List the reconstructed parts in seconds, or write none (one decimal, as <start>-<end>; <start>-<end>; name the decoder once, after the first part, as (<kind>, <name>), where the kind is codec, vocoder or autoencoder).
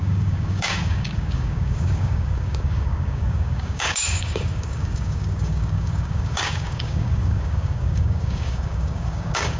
0.0-9.6 (codec, DAC)